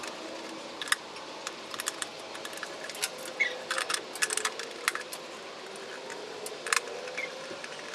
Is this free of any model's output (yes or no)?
yes